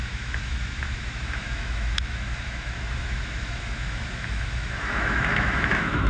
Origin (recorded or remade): remade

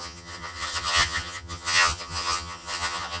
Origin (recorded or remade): remade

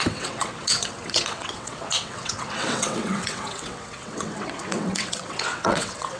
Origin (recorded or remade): remade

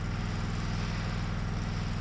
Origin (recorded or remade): recorded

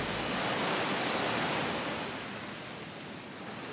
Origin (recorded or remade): recorded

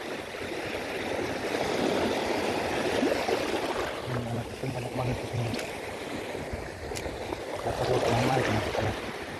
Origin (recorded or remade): remade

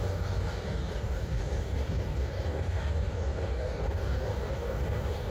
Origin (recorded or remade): remade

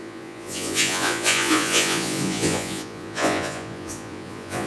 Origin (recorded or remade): remade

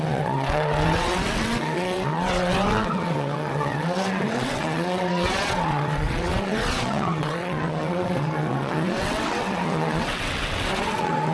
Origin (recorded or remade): remade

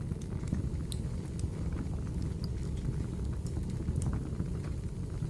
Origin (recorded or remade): recorded